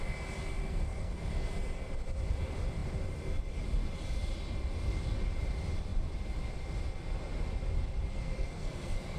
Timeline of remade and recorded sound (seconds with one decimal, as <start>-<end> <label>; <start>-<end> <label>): 0.0-0.6 recorded; 0.6-1.3 remade; 1.3-8.1 recorded; 8.1-9.2 remade